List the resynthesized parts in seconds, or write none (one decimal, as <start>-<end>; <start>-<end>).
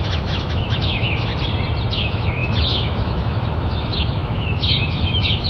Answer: 0.0-1.3; 1.9-5.5